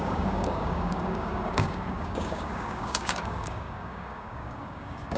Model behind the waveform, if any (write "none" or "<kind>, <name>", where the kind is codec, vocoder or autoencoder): codec, DAC